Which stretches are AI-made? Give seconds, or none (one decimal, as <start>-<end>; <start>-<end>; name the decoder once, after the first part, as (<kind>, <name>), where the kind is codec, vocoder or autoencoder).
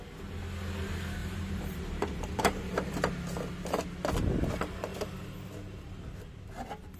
1.2-3.0 (vocoder, BigVGAN v2)